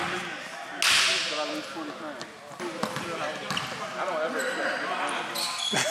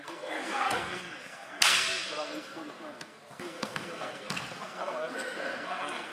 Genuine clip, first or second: first